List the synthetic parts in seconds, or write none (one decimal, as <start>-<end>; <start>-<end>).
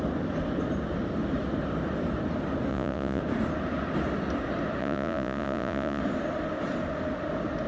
2.7-3.2; 4.8-6.0